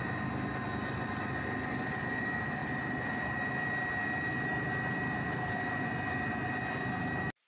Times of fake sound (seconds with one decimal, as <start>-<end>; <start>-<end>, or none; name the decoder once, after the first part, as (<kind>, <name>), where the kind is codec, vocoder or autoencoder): none